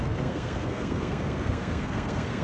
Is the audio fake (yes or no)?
yes